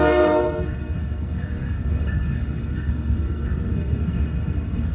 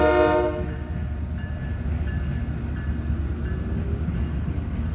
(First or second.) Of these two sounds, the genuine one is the second